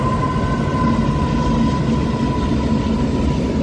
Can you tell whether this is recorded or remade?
recorded